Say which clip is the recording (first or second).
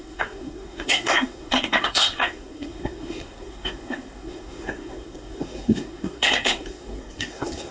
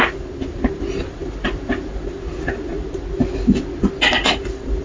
second